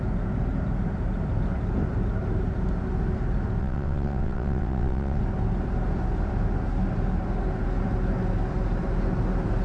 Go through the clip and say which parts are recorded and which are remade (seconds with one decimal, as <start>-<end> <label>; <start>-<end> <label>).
0.0-3.6 recorded; 3.6-5.2 remade; 5.2-9.6 recorded